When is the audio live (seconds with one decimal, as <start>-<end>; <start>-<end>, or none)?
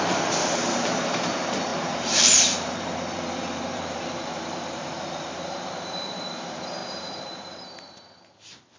none